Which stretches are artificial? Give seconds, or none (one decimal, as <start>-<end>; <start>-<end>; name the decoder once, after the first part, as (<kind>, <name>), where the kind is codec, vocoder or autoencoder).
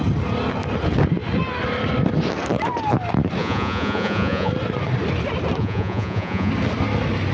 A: 3.4-4.5 (vocoder, Vocos); 5.6-6.5